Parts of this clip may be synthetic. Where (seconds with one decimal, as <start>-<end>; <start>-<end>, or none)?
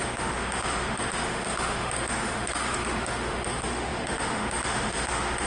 0.0-5.5